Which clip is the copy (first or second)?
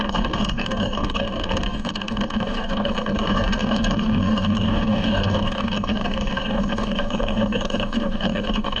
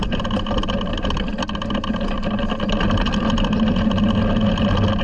first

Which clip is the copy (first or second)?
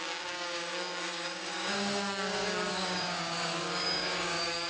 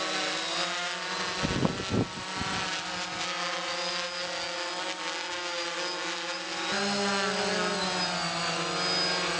first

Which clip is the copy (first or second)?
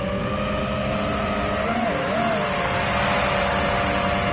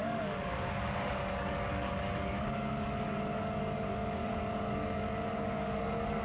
second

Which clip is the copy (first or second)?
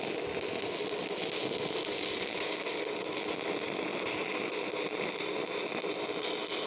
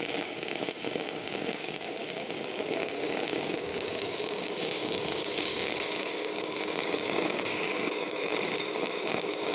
second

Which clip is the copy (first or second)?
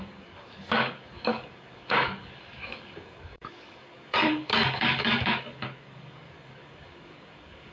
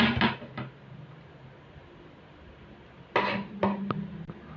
first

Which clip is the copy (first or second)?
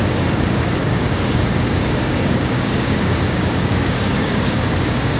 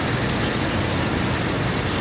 first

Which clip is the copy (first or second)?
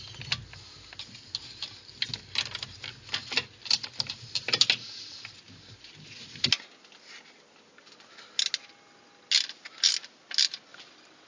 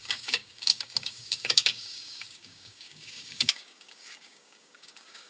second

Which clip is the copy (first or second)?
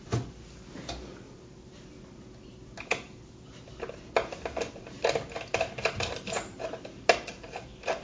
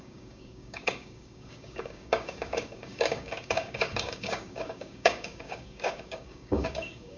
second